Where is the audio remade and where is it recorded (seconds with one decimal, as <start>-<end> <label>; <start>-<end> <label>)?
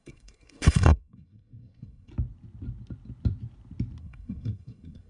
0.0-2.1 remade; 2.1-4.0 recorded; 4.0-5.1 remade